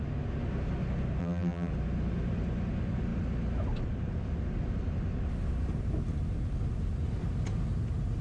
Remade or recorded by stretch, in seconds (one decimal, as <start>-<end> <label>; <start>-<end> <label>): 0.0-1.2 recorded; 1.2-1.7 remade; 1.7-8.2 recorded

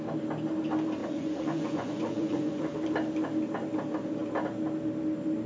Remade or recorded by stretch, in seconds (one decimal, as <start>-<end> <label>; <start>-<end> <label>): 0.0-1.0 recorded; 1.0-2.6 remade; 2.6-5.5 recorded

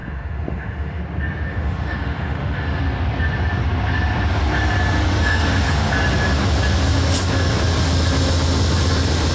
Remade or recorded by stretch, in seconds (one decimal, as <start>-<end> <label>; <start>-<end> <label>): 0.0-1.0 remade; 1.0-1.5 recorded; 1.5-2.8 remade; 2.8-5.1 recorded; 5.1-5.9 remade; 5.9-9.3 recorded

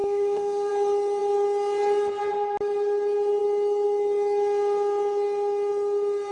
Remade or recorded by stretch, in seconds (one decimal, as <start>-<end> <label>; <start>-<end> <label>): 0.0-0.7 remade; 0.7-6.3 recorded